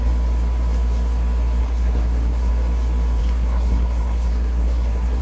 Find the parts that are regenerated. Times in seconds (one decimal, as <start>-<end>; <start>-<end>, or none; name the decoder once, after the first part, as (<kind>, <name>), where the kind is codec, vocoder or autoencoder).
1.6-2.5 (codec, SNAC); 3.2-5.2